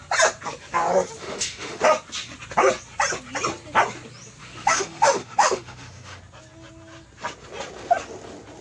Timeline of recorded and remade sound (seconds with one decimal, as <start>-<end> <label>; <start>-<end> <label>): 0.0-1.2 recorded; 1.2-1.8 remade; 1.8-4.4 recorded; 4.4-6.2 remade; 6.2-8.6 recorded